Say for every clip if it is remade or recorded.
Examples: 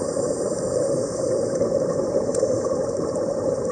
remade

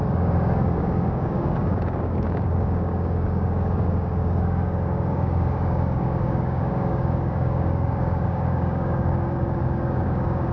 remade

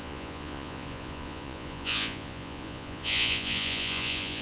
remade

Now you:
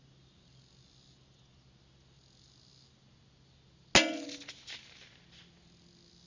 recorded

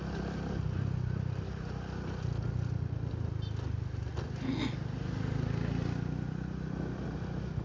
recorded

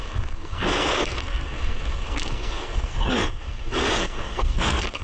remade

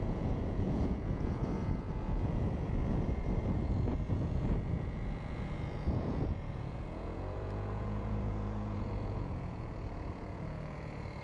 remade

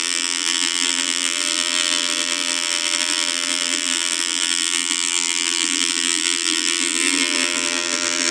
remade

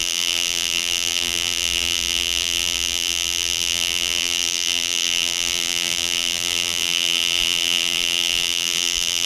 remade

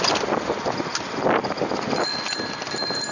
recorded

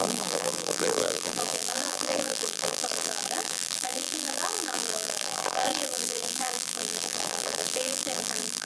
remade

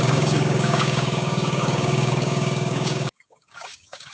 remade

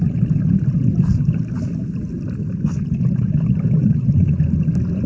recorded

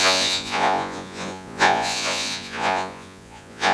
remade